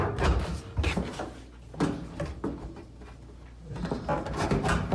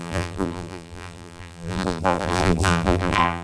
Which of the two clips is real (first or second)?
first